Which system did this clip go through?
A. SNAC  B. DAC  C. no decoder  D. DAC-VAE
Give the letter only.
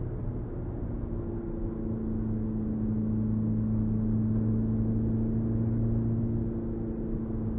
C